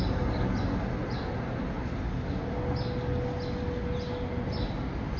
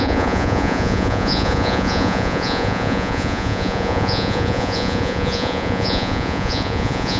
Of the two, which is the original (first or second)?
first